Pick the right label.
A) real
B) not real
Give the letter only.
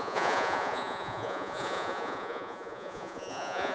B